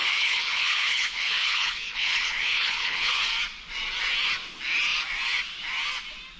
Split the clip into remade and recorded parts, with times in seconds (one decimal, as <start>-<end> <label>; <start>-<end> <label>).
0.0-3.2 remade; 3.2-6.4 recorded